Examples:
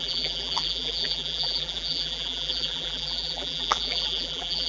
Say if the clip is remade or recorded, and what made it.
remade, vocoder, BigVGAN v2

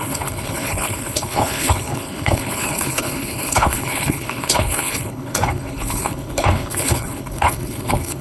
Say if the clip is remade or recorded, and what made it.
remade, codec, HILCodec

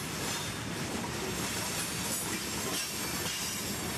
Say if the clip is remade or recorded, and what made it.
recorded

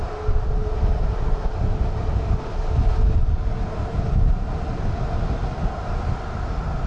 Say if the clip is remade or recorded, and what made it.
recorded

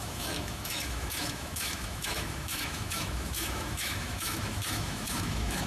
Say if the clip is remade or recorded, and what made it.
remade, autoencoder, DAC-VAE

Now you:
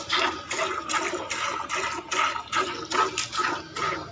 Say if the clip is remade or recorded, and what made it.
recorded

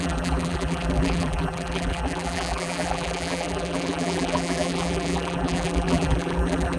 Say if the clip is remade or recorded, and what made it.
remade, vocoder, BigVGAN v2